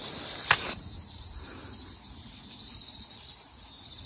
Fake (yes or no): no